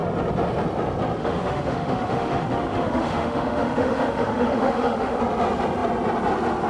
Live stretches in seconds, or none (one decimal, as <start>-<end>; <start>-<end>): 0.0-1.2; 5.2-6.7